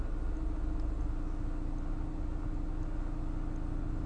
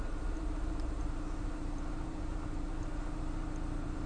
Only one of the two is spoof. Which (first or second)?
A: second